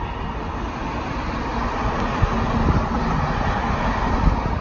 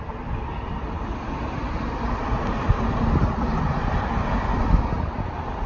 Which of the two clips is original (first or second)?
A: first